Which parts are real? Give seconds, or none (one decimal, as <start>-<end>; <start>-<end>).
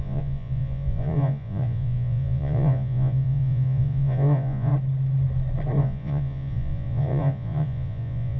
4.7-5.8